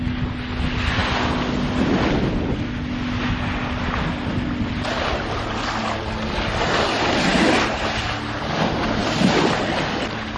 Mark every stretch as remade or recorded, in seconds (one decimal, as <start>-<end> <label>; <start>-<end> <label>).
0.0-10.4 recorded